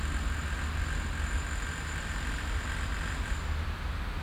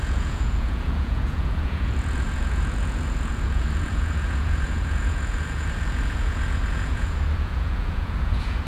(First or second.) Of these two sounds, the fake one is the second